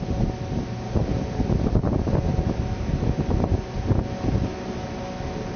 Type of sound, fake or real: real